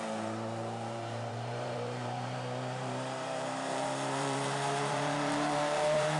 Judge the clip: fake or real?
fake